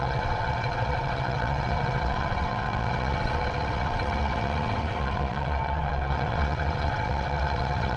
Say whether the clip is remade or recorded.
remade